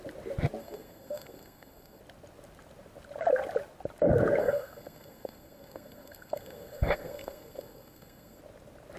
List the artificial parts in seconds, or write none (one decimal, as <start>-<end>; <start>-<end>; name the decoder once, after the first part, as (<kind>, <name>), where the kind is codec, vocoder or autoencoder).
0.6-2.0 (codec, SNAC); 4.4-8.4